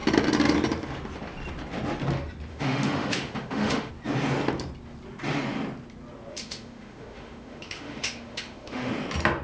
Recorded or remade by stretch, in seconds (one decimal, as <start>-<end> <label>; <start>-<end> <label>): 0.0-2.5 recorded; 2.5-3.9 remade; 3.9-6.3 recorded; 6.3-8.9 remade; 8.9-9.4 recorded